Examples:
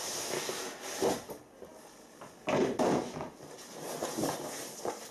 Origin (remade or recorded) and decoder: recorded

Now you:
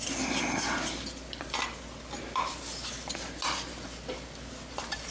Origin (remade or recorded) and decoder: recorded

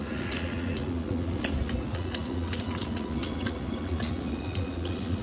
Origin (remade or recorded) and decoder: remade, vocoder, Vocos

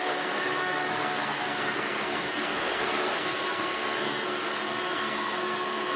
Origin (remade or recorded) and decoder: remade, codec, SNAC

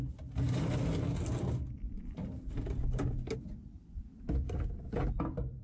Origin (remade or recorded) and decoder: recorded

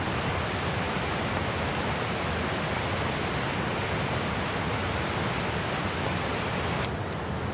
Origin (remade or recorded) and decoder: recorded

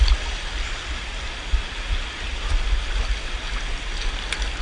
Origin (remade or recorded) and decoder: recorded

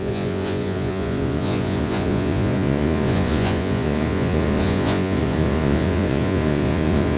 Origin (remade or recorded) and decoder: remade, vocoder, Vocos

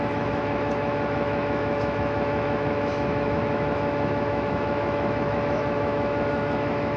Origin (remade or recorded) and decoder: remade, autoencoder, DAC-VAE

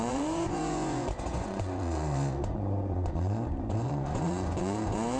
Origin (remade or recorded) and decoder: remade, vocoder, Vocos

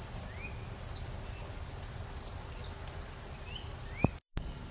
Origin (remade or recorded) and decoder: recorded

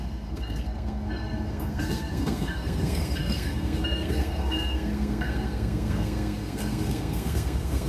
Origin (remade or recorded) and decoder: remade, codec, SNAC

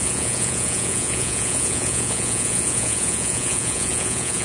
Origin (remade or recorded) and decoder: remade, vocoder, Vocos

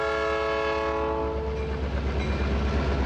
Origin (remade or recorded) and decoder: recorded